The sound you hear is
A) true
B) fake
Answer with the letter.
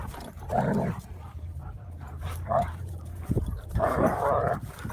B